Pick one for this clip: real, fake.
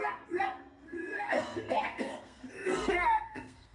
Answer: fake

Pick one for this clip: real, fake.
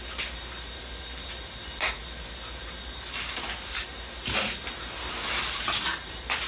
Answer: real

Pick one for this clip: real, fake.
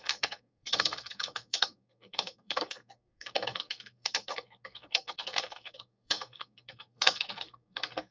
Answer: fake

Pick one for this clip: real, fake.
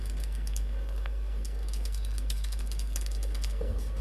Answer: fake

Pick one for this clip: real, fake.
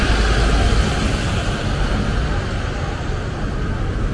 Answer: real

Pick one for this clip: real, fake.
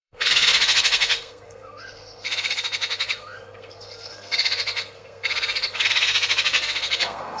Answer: fake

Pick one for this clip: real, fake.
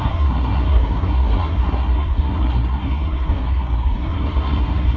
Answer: fake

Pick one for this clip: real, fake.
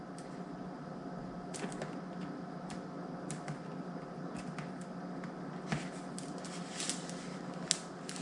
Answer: real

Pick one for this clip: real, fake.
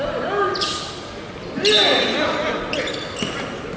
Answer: real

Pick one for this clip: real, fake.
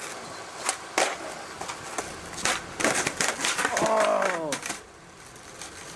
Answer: real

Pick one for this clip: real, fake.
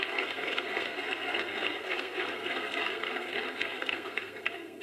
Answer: fake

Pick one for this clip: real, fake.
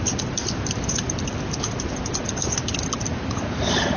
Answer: real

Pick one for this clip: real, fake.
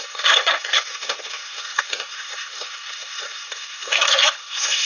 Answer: fake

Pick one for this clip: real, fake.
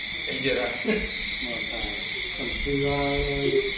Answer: real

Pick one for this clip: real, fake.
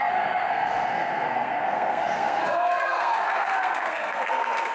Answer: fake